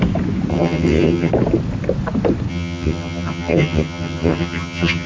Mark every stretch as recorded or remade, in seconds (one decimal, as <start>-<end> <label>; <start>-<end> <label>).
0.0-0.5 recorded; 0.5-1.3 remade; 1.3-2.5 recorded; 2.5-5.1 remade